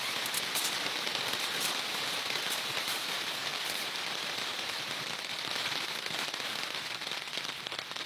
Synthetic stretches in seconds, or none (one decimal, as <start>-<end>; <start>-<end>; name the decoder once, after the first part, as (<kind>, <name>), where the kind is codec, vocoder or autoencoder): none